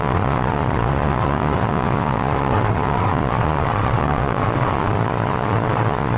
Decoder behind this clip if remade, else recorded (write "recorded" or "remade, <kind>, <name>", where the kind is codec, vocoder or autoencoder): remade, vocoder, Vocos